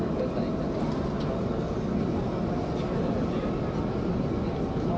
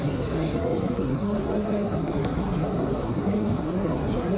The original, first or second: first